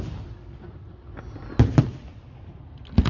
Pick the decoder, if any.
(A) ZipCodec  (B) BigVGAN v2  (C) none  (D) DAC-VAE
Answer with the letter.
C